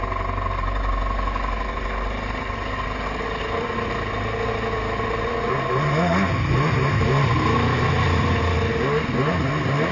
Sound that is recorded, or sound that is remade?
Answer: recorded